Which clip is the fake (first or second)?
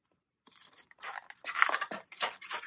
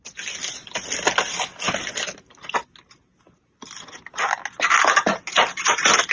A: first